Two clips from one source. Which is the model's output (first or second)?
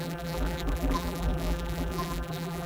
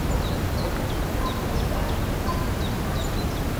first